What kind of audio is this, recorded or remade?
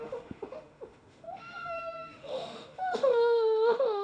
remade